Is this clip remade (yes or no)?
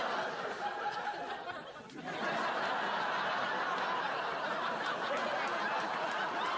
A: no